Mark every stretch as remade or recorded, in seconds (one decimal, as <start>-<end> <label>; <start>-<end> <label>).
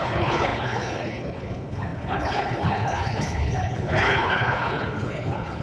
0.0-5.6 remade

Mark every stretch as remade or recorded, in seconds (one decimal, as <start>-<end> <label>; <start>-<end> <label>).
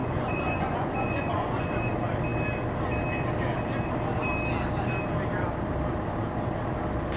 0.0-1.9 remade; 1.9-7.2 recorded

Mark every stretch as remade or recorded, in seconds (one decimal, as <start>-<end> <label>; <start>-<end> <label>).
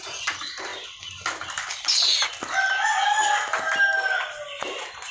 0.0-5.1 recorded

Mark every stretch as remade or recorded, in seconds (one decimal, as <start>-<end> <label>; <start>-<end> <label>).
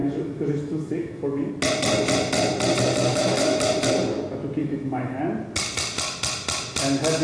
0.0-1.5 remade; 1.5-3.1 recorded; 3.1-3.7 remade; 3.7-4.6 recorded; 4.6-5.2 remade; 5.2-7.2 recorded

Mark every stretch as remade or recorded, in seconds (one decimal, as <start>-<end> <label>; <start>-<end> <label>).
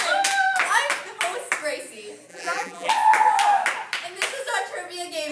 0.0-2.3 recorded; 2.3-2.9 remade; 2.9-5.3 recorded